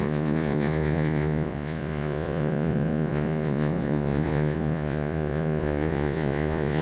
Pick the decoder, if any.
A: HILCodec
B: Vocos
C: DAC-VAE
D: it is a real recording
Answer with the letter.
B